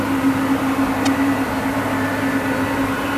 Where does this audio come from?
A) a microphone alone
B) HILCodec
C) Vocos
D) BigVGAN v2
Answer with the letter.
A